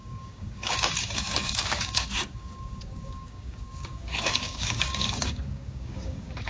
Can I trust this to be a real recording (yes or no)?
no